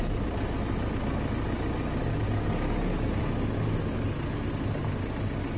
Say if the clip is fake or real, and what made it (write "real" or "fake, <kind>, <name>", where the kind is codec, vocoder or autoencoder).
real